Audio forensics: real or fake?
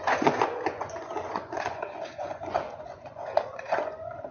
fake